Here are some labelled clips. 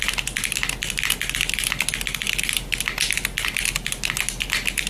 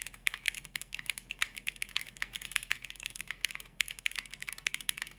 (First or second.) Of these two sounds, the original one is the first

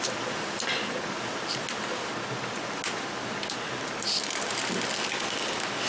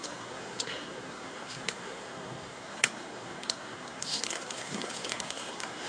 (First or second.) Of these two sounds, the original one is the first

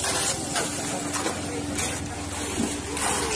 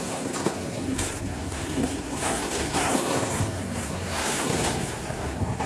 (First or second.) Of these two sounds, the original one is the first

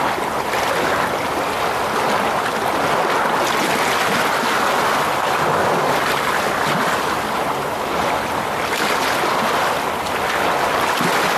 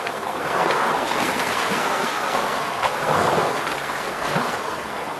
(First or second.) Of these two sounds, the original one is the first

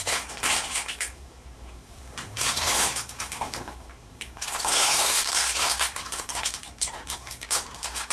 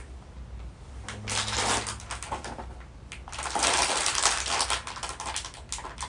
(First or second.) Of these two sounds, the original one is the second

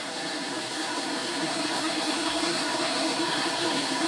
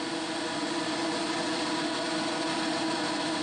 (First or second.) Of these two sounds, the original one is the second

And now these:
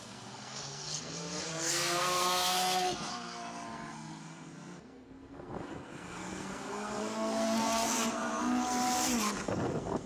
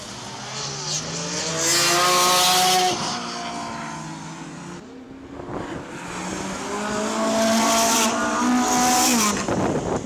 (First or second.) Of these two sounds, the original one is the second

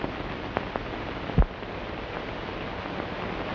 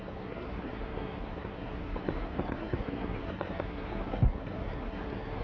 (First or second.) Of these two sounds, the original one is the first